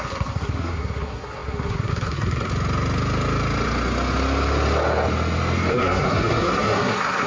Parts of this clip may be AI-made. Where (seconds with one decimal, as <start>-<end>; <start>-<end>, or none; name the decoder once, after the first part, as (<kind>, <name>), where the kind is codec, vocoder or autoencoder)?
0.0-2.5 (codec, SNAC); 5.7-7.3